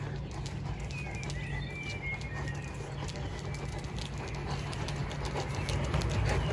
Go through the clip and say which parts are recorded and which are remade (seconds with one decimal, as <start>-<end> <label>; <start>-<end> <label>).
0.0-6.5 recorded